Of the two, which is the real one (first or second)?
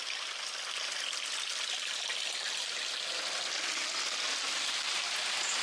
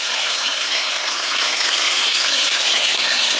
first